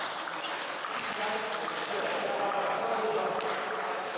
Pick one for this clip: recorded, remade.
recorded